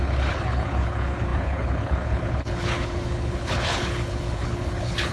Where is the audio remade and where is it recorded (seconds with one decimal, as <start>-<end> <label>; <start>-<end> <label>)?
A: 0.0-5.1 remade